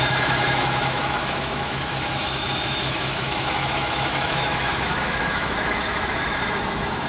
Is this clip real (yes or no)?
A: no